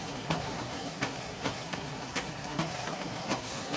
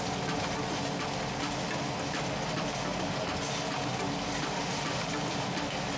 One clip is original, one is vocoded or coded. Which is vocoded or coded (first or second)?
first